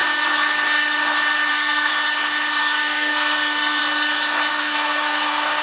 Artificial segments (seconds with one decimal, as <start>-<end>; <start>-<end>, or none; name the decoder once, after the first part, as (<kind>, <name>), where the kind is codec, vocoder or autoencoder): 1.5-1.9 (codec, SNAC); 2.6-3.8; 4.5-5.6